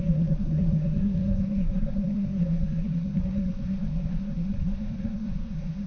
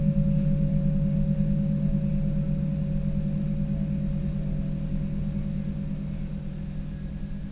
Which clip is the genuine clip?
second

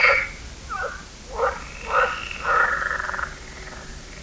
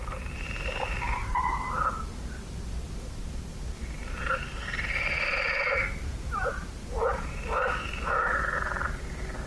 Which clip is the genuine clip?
first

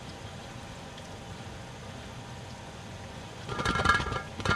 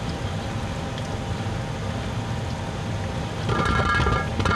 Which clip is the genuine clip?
second